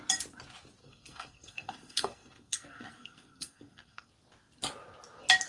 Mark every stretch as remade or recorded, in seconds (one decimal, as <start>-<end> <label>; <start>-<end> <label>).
0.0-0.8 recorded; 0.8-4.1 remade; 4.1-5.5 recorded